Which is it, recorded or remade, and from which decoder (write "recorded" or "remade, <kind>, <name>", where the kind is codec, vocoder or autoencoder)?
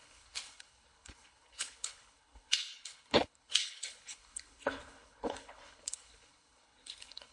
remade, codec, HILCodec